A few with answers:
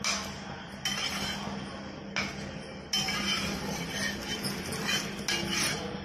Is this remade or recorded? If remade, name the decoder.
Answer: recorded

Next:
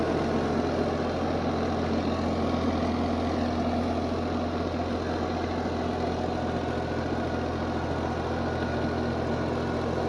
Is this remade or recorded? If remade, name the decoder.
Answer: recorded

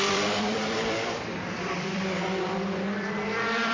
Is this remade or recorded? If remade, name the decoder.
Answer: remade, vocoder, BigVGAN v2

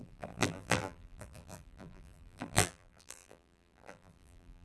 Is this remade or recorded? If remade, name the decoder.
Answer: remade, vocoder, BigVGAN v2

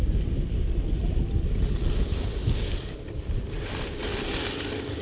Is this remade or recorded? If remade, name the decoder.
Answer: recorded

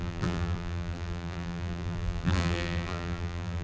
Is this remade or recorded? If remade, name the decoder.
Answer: remade, vocoder, BigVGAN v2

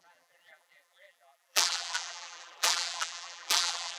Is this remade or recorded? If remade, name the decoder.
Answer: remade, vocoder, BigVGAN v2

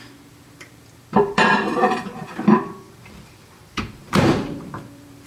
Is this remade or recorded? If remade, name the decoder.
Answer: remade, vocoder, BigVGAN v2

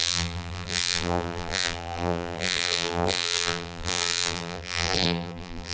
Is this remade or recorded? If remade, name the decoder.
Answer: remade, vocoder, BigVGAN v2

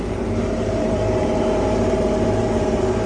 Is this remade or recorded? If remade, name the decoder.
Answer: remade, vocoder, BigVGAN v2